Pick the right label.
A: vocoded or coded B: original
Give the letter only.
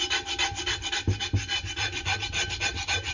B